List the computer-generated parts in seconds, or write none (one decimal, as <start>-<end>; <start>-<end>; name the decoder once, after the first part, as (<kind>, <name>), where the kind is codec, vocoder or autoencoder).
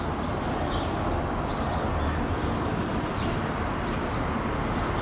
none